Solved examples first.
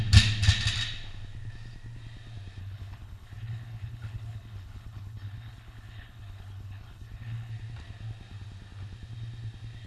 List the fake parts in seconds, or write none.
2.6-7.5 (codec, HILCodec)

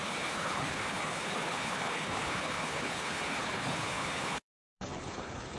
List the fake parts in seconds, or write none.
0.0-5.6 (codec, HILCodec)

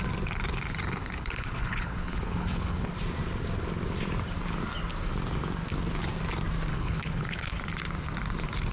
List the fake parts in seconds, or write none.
1.0-2.9 (codec, HILCodec); 6.7-7.5

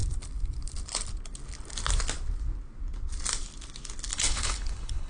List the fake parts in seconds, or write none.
4.1-5.1 (codec, HILCodec)

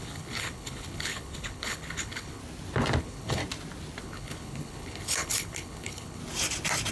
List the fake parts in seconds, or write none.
0.0-2.4 (codec, HILCodec); 3.0-3.4; 4.0-6.2

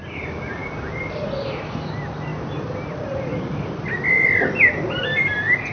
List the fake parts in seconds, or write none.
none

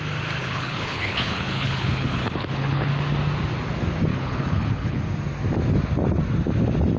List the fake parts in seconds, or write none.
0.4-2.9 (codec, HILCodec); 4.1-5.0

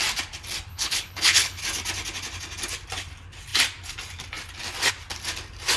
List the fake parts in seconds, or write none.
0.7-1.6 (codec, HILCodec)